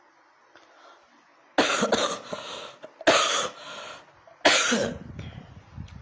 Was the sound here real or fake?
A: real